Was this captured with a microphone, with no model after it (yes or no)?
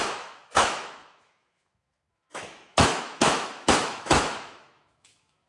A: no